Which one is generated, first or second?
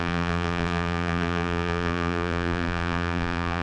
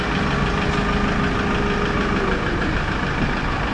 first